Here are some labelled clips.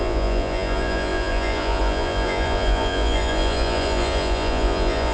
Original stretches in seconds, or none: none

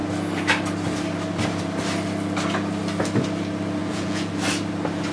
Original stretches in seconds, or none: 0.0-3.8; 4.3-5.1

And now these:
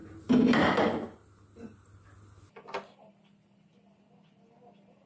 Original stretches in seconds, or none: 0.0-5.1

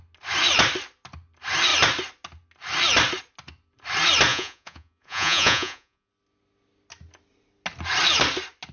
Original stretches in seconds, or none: 0.0-4.3; 6.1-8.7